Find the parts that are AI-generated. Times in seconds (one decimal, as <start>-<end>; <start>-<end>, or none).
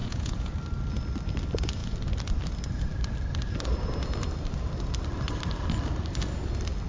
0.0-0.5